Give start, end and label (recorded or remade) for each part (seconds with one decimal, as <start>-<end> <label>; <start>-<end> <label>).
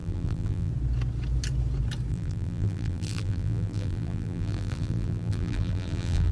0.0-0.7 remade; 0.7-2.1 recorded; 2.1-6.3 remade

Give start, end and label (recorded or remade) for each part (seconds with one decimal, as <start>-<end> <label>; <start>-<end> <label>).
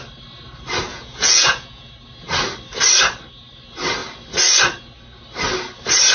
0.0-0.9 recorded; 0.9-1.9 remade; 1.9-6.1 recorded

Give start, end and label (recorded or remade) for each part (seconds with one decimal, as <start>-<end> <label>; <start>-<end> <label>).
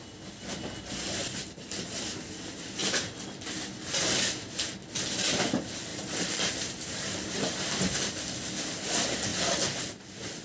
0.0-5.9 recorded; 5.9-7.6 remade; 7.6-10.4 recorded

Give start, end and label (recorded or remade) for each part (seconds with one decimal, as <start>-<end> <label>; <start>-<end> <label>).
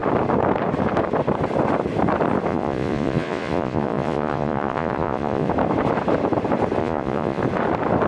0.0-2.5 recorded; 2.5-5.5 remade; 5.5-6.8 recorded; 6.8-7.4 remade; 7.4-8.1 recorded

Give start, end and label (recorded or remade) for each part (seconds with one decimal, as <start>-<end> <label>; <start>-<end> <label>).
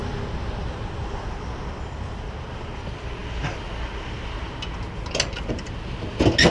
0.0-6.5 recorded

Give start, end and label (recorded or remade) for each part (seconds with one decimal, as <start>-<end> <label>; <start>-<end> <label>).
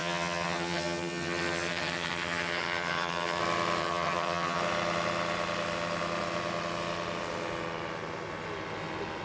0.0-3.4 remade; 3.4-3.8 recorded; 3.8-4.6 remade; 4.6-9.2 recorded